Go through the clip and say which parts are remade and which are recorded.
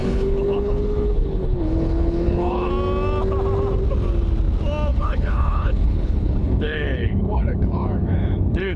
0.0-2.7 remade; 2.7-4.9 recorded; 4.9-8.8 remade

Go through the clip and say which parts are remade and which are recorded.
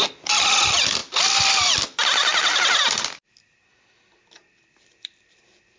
0.0-5.8 recorded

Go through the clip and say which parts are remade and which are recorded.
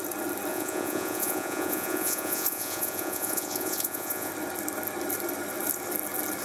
0.0-0.5 recorded; 0.5-4.3 remade; 4.3-6.4 recorded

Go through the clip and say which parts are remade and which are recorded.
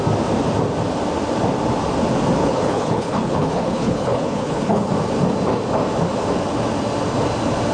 0.0-2.4 recorded; 2.4-4.9 remade; 4.9-7.7 recorded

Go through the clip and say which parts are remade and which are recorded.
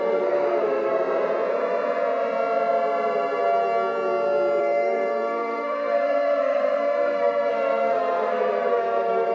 0.0-0.9 remade; 0.9-4.6 recorded; 4.6-9.3 remade